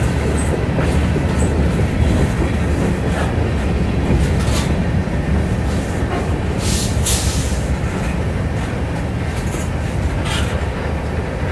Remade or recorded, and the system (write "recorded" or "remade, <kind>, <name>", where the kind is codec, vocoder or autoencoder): recorded